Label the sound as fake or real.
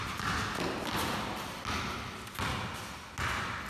real